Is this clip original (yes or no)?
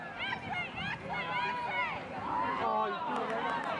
yes